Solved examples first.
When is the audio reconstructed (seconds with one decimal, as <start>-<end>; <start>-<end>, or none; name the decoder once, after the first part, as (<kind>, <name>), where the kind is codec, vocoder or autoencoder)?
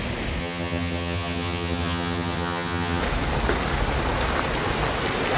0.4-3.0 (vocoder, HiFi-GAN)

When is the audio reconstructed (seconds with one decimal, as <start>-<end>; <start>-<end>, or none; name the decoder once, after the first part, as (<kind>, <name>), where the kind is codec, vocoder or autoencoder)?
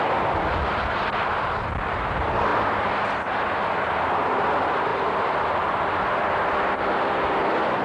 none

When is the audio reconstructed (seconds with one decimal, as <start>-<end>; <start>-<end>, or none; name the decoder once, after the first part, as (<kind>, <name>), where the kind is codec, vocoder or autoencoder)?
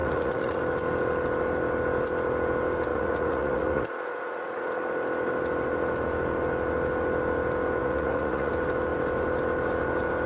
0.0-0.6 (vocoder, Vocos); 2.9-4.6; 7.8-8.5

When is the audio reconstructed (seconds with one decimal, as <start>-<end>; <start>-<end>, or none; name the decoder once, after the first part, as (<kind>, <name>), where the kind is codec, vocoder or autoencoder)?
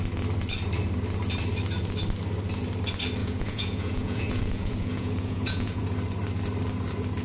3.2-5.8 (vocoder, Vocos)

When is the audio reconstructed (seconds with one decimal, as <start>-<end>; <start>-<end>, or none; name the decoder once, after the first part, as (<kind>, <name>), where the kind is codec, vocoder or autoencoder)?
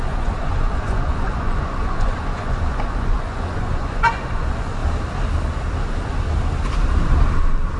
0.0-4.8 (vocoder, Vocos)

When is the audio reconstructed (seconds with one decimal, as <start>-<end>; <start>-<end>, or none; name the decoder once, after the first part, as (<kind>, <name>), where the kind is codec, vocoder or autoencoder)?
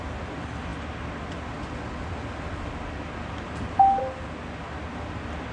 none